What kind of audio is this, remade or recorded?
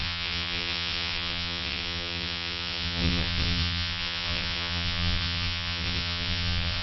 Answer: remade